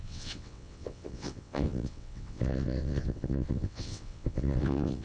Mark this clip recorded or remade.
remade